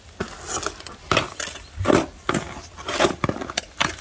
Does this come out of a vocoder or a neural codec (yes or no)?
no